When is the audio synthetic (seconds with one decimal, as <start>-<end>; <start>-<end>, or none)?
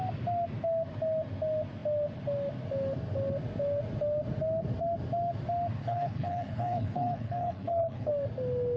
5.8-8.1